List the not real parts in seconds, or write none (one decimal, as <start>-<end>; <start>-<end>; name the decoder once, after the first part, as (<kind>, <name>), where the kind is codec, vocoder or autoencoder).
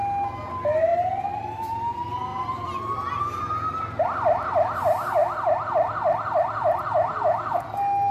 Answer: none